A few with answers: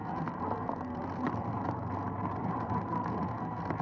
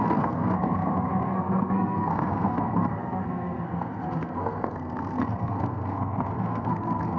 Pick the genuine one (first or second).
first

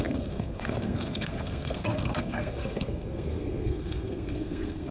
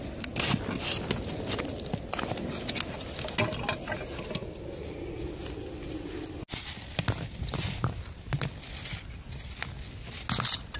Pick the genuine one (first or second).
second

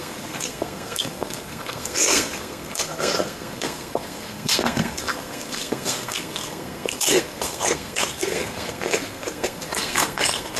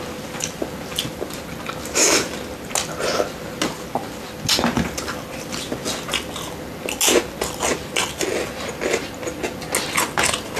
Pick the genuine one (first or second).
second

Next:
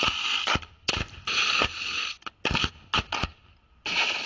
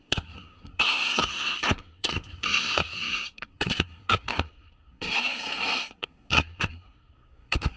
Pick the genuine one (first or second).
first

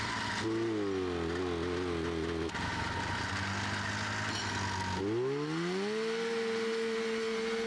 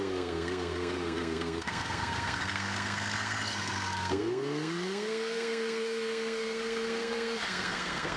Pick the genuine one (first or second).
first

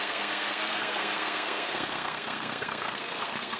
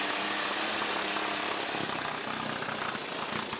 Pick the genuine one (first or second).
second